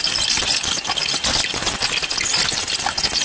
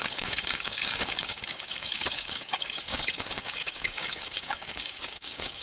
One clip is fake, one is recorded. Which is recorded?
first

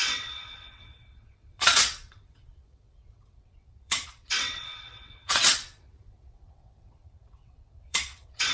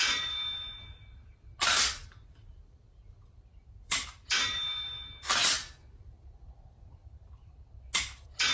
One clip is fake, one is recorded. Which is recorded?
second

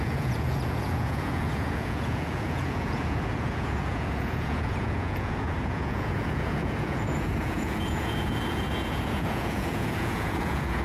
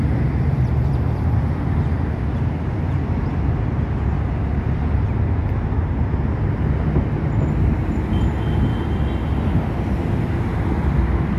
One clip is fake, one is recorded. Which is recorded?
second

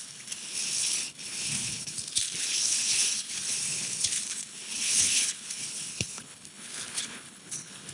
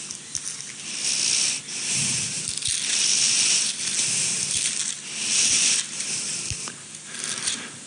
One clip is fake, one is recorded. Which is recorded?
second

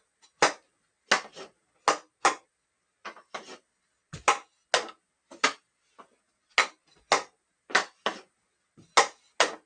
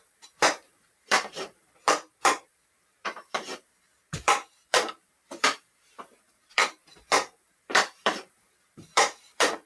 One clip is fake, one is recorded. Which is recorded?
first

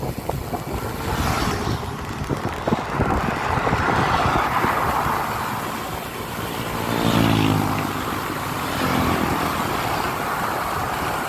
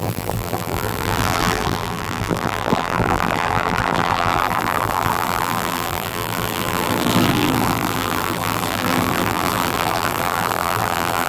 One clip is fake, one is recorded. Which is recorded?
first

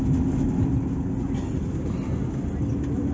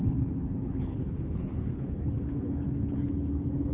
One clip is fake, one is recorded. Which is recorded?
first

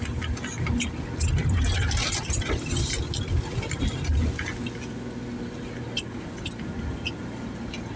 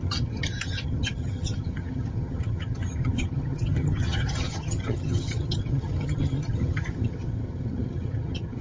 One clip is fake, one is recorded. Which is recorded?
first